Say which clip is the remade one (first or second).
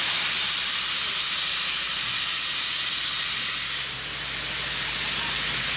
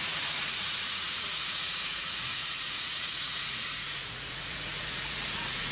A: second